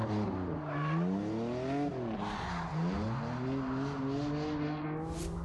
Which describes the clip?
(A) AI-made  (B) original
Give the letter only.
B